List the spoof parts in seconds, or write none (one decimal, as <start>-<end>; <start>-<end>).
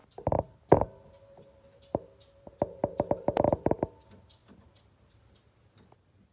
4.4-5.3